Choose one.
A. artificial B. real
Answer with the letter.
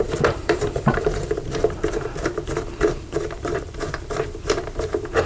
A